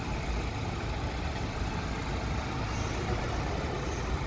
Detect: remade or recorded recorded